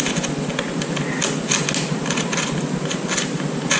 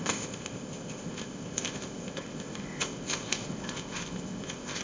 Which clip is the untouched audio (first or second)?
first